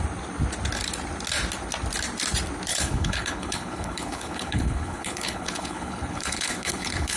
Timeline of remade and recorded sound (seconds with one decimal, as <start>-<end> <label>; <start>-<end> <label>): 0.0-2.7 recorded; 2.7-7.2 remade